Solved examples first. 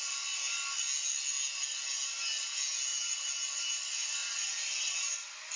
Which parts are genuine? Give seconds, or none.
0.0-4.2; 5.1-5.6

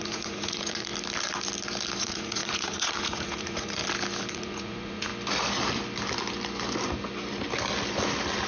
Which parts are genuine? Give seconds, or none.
0.9-2.0; 3.8-4.3; 5.1-8.5

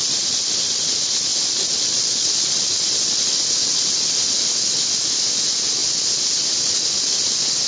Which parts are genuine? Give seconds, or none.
0.0-7.7

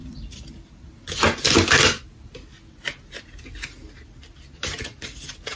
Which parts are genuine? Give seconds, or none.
0.0-5.6